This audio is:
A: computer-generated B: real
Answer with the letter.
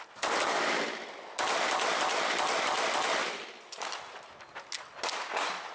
B